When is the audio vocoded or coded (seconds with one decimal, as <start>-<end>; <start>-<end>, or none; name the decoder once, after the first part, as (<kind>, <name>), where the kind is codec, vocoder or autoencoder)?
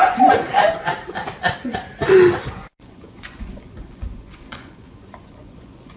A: 0.0-0.9 (vocoder, Vocos); 2.4-6.0